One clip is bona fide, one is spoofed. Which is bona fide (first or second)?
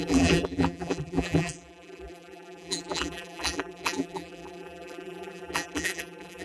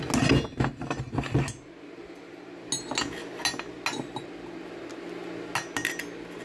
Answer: second